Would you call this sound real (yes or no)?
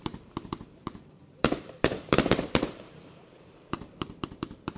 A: no